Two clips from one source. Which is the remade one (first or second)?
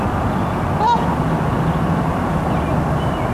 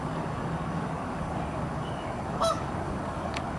second